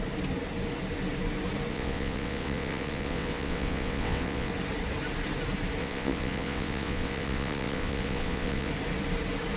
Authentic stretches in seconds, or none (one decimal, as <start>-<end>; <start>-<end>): 0.0-1.7; 4.5-5.8; 8.7-9.6